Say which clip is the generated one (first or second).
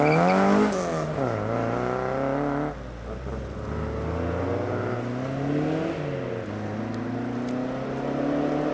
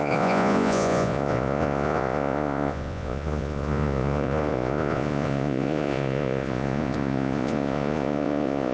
second